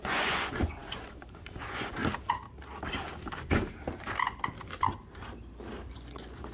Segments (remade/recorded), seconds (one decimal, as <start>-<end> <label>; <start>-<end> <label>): 0.0-2.0 remade; 2.0-5.9 recorded; 5.9-6.5 remade